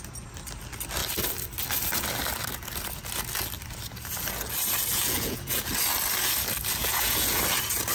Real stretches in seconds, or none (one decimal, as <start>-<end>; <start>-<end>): 0.0-4.9; 5.7-6.8; 7.4-7.9